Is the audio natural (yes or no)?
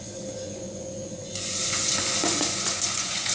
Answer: no